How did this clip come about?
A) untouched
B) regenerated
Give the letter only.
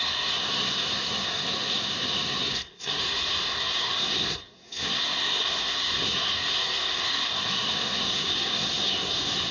B